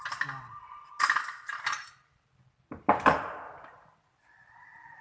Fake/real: real